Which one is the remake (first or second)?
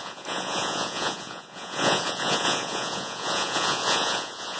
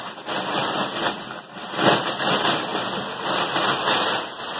first